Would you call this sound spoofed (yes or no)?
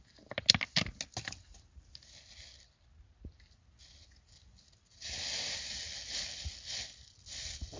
no